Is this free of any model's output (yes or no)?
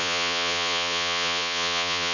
no